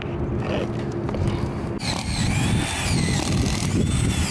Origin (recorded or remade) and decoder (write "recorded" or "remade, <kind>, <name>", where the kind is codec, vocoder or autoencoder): recorded